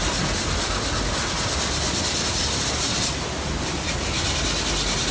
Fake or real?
real